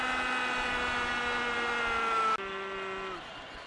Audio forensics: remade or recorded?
recorded